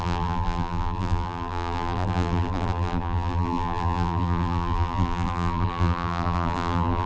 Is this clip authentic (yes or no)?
no